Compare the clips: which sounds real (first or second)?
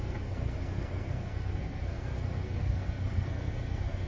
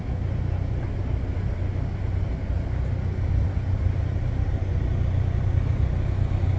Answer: second